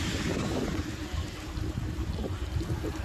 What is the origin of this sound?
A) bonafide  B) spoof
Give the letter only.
B